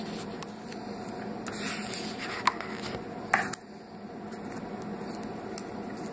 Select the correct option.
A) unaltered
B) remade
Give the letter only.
A